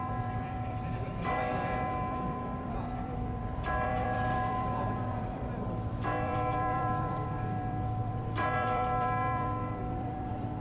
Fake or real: fake